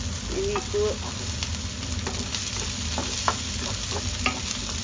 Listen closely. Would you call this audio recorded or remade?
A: recorded